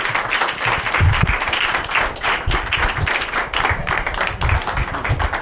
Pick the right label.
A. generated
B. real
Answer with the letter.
B